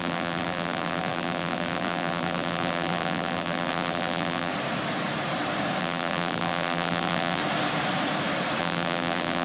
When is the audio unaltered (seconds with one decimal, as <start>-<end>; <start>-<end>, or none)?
4.5-5.8; 7.4-8.6